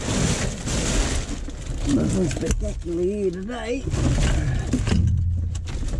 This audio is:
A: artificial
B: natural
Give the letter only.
B